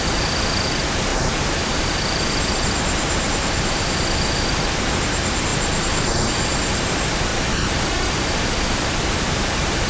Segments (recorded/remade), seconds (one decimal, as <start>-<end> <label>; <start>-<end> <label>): 0.0-5.5 remade; 5.5-6.7 recorded; 6.7-9.9 remade